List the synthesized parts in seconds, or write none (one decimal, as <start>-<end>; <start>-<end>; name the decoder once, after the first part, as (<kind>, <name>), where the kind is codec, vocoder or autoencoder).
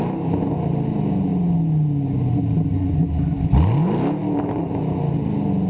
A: none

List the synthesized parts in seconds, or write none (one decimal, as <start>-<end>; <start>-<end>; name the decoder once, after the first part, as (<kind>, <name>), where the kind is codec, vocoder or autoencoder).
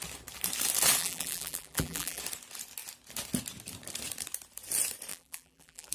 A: 1.0-2.2 (vocoder, BigVGAN v2); 5.1-5.9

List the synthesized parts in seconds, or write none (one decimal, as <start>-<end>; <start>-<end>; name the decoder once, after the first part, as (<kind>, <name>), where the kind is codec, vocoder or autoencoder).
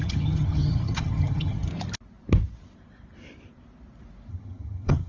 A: 0.0-1.7 (vocoder, HiFi-GAN); 4.3-5.1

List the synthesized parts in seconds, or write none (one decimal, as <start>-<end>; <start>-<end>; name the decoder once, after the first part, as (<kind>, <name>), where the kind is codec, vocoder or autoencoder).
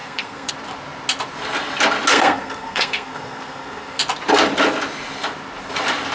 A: 0.0-0.5 (codec, SNAC); 2.1-4.0